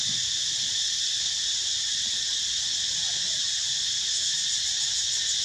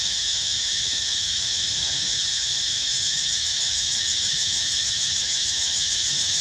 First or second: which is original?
first